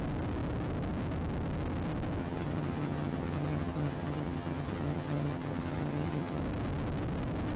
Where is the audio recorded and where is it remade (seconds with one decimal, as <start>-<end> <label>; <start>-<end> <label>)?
0.0-2.2 recorded; 2.2-6.4 remade; 6.4-7.6 recorded